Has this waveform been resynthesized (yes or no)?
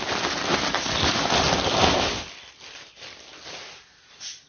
no